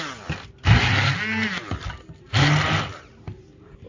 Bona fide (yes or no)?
yes